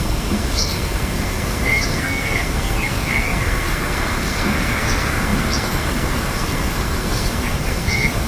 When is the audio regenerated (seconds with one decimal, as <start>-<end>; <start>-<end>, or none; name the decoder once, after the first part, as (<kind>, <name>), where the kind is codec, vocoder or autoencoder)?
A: 0.0-8.3 (codec, SNAC)